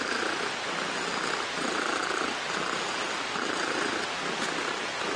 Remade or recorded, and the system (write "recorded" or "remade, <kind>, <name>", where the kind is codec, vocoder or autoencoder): recorded